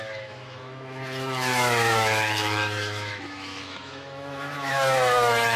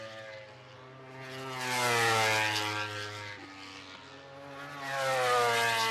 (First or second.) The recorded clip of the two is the second